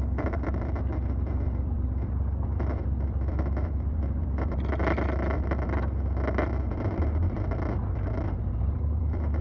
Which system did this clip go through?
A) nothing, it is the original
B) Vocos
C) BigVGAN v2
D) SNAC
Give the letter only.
C